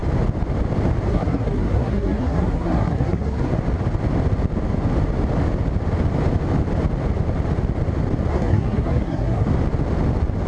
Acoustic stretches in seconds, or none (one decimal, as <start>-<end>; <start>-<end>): 0.0-1.1; 3.5-8.3; 9.5-10.5